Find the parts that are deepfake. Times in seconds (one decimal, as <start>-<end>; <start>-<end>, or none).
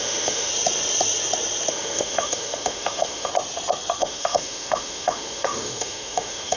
0.0-0.5; 1.7-3.3; 4.0-6.6